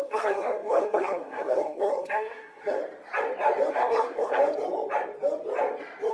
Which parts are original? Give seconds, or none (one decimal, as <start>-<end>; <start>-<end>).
2.8-3.7; 4.4-6.1